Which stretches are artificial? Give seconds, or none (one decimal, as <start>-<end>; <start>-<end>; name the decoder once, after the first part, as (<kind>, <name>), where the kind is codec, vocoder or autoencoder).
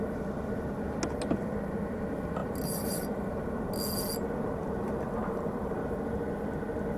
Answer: 2.4-3.5 (vocoder, BigVGAN v2); 5.2-5.7